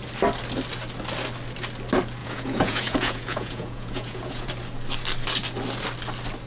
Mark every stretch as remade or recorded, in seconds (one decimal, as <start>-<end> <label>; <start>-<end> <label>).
0.0-2.2 recorded; 2.2-4.5 remade; 4.5-6.5 recorded